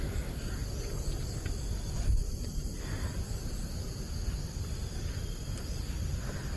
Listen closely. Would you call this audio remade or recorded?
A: recorded